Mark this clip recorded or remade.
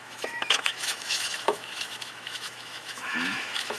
remade